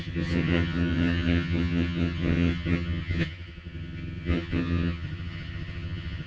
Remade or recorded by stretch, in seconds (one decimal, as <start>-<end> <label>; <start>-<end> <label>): 0.0-6.3 remade